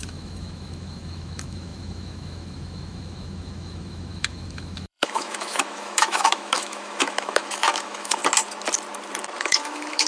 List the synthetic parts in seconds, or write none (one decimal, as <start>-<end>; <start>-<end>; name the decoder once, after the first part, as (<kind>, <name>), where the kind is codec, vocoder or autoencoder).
0.0-8.2 (autoencoder, DAC-VAE); 9.4-10.1

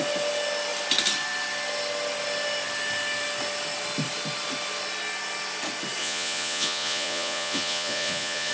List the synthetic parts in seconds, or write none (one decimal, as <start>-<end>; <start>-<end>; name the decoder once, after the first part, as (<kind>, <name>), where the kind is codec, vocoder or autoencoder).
6.0-8.5 (vocoder, Vocos)